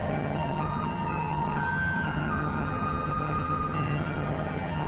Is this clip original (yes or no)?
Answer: no